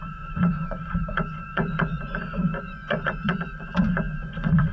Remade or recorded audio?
remade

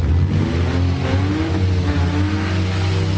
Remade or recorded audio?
recorded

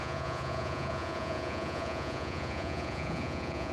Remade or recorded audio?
remade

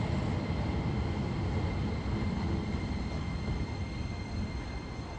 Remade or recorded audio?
recorded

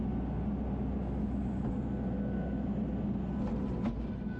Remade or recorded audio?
recorded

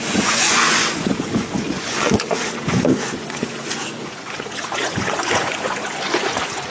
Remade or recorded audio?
remade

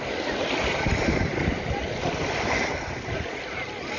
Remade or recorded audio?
recorded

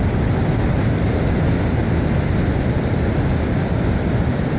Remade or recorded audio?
recorded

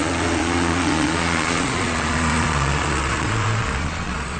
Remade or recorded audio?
remade